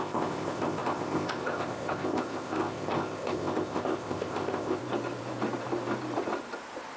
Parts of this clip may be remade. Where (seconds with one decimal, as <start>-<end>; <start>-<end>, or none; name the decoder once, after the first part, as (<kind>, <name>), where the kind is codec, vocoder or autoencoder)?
0.0-4.8 (codec, ZipCodec)